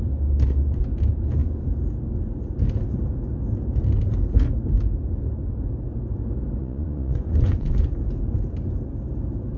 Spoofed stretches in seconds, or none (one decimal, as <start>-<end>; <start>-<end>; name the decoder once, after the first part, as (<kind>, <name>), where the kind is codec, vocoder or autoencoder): 6.6-7.9 (vocoder, Vocos)